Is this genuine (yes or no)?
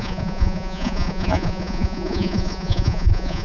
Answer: no